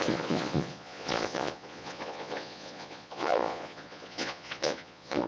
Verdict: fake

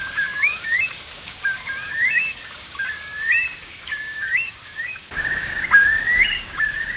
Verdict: fake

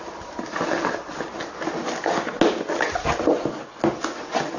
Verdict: real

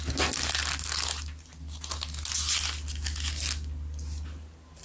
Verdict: real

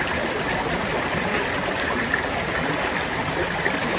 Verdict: real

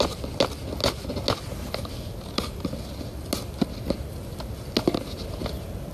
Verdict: real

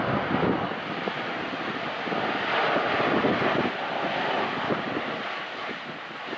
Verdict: real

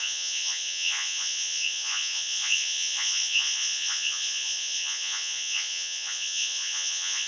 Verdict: fake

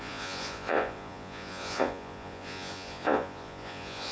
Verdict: fake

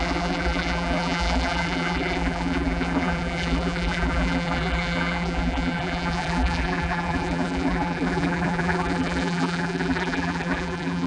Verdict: fake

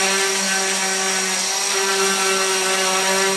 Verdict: real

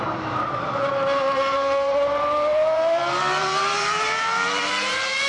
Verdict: fake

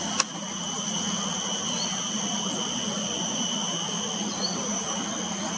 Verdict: real